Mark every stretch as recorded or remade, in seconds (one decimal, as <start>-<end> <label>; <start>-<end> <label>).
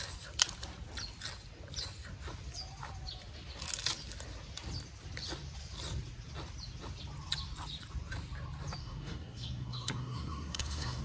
0.0-8.8 recorded; 8.8-11.0 remade